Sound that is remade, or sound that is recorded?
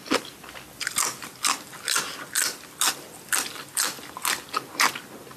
recorded